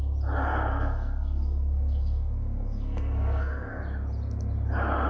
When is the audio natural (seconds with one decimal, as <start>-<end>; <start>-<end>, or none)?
0.0-0.7; 3.8-5.1